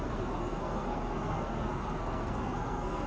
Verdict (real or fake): fake